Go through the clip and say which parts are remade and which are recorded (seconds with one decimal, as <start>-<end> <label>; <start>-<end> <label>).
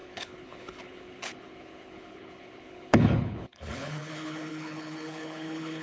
0.0-5.8 remade